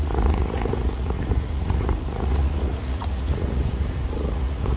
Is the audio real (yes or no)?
no